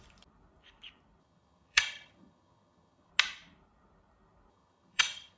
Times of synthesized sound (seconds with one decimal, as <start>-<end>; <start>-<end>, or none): 1.2-3.1; 4.5-5.4